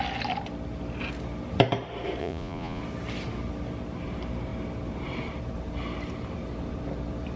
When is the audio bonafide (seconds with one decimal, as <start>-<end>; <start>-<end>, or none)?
0.0-2.2; 2.8-7.4